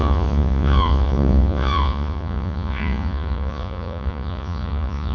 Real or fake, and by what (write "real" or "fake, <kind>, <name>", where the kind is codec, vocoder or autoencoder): fake, vocoder, Vocos